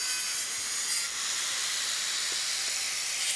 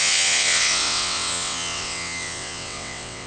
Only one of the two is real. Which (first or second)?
first